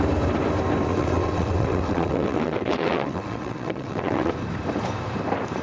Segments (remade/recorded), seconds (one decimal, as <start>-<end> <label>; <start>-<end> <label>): 0.0-0.9 recorded; 0.9-4.3 remade; 4.3-5.6 recorded